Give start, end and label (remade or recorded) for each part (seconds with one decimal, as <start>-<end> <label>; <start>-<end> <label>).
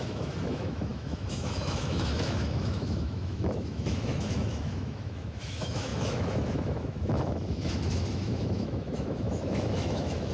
0.0-10.3 remade